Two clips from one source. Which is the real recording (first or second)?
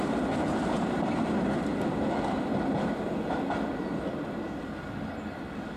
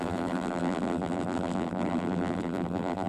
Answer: first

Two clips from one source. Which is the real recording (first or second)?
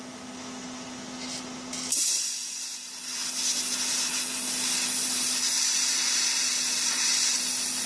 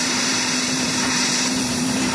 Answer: first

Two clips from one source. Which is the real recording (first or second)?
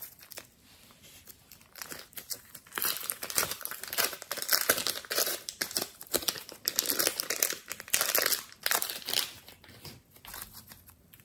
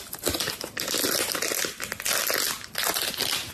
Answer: second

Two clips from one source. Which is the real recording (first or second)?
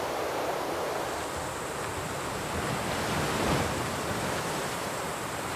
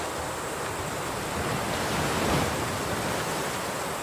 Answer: second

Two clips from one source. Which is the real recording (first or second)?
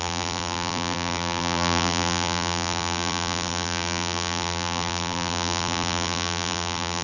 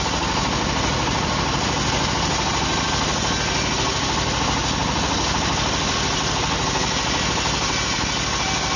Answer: second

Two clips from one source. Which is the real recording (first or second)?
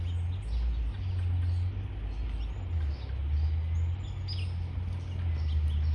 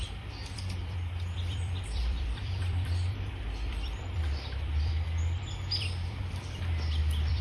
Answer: first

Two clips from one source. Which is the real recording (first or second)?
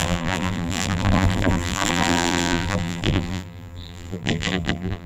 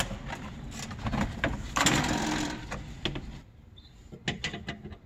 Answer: second